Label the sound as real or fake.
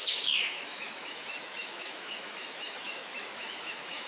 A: fake